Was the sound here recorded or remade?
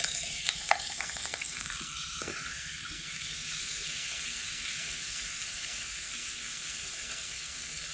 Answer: remade